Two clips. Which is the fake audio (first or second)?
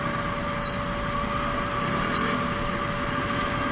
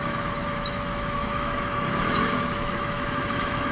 second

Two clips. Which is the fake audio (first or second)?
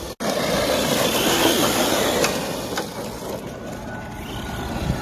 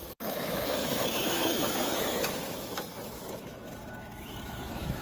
second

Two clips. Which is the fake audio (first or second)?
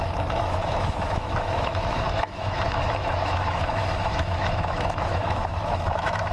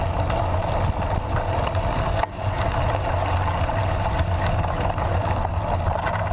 first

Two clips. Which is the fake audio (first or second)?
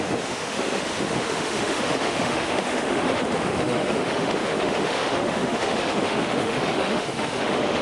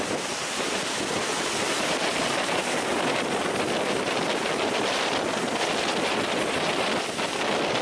first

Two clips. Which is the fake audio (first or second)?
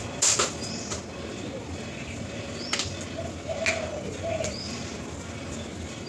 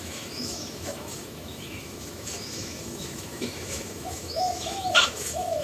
second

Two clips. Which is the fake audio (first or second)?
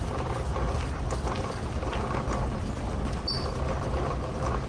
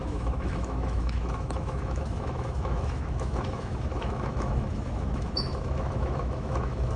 second